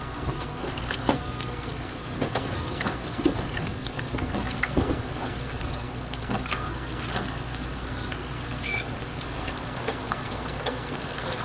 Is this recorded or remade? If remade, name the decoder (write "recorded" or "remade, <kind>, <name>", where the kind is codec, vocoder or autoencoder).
remade, codec, SNAC